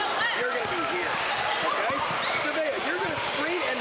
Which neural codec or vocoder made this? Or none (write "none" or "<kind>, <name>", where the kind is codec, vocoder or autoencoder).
none